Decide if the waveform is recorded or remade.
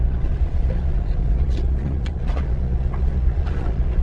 remade